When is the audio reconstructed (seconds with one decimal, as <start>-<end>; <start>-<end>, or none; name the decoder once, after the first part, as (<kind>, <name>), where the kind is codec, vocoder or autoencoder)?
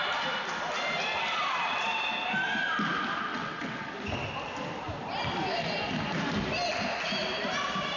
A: 3.3-3.9 (vocoder, WaveNeXt)